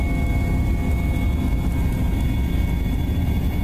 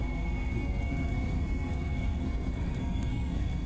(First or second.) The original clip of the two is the first